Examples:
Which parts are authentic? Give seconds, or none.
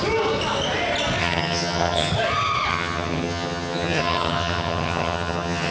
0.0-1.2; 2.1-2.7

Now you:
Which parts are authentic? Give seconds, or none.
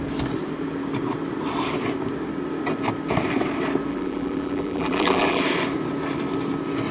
0.0-3.9; 5.4-6.9